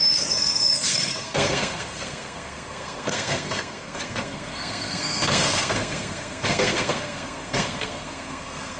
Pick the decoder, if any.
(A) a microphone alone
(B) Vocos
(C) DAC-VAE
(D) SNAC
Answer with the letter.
D